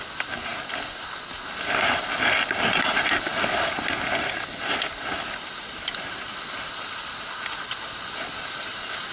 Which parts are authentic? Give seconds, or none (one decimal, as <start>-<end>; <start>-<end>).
0.0-9.1